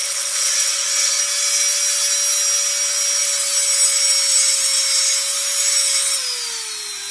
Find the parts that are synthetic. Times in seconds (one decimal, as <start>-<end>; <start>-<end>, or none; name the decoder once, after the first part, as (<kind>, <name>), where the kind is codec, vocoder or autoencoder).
0.0-1.2 (vocoder, WaveNeXt)